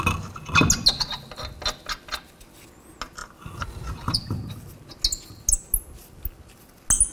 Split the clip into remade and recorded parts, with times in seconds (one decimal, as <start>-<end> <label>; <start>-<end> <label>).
0.0-7.1 recorded